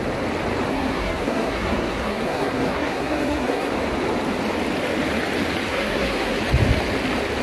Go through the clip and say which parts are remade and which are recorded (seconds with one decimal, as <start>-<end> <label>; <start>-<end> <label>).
0.0-0.7 recorded; 0.7-3.7 remade; 3.7-5.7 recorded; 5.7-6.4 remade; 6.4-7.4 recorded